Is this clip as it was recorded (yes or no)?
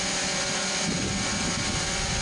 no